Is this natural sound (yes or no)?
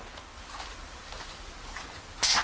yes